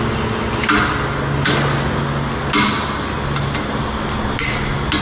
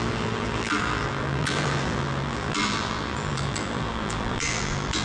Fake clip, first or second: second